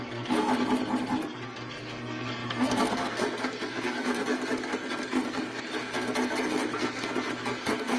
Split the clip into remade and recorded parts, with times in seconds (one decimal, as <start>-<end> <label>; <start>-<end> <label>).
0.0-0.5 remade; 0.5-1.1 recorded; 1.1-8.0 remade